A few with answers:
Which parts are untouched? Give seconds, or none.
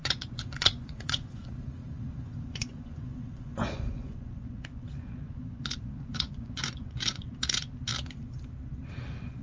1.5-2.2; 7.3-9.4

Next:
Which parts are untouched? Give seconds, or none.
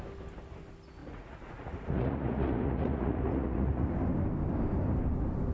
0.0-1.0; 3.9-5.5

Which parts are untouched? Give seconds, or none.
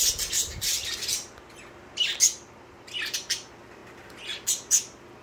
3.8-4.7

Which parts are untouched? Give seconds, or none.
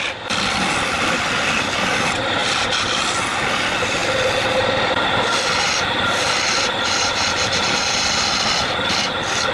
0.0-9.5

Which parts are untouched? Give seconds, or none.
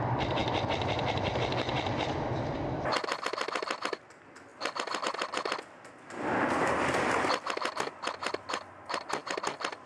0.0-9.9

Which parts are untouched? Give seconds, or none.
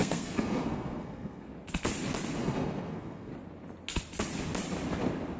1.5-2.4; 3.3-5.4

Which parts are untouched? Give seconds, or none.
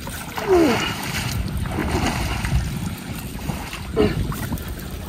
0.0-5.1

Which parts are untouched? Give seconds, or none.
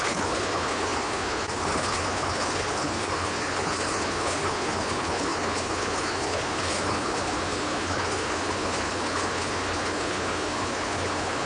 none